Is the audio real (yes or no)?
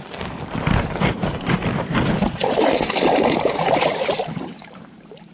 no